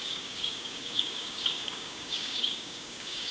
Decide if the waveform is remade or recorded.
remade